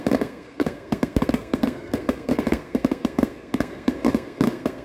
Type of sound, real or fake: fake